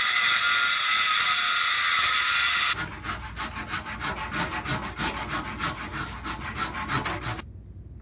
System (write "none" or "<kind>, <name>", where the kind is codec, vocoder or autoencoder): none